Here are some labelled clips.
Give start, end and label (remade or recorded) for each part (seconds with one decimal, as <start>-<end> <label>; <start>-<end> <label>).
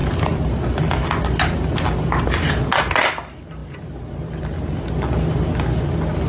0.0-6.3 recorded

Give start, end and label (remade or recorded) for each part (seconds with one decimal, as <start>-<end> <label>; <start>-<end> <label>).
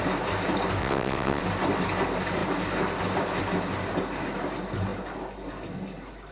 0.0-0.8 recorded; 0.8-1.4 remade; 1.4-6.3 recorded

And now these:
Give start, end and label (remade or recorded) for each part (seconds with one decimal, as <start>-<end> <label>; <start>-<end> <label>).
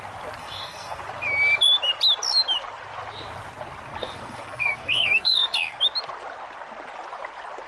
0.0-0.4 recorded; 0.4-1.0 remade; 1.0-4.0 recorded; 4.0-5.8 remade; 5.8-7.7 recorded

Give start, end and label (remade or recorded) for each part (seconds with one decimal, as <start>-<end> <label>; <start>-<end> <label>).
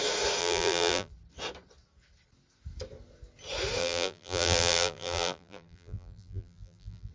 0.0-0.4 recorded; 0.4-1.1 remade; 1.1-3.8 recorded; 3.8-7.1 remade